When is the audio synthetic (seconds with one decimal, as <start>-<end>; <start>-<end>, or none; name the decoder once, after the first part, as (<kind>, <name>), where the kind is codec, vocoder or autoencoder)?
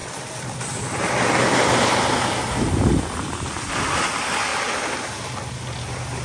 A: none